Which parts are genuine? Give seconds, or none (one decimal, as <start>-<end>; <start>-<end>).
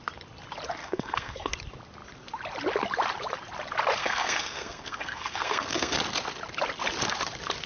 0.0-0.8; 1.5-4.0; 6.0-7.7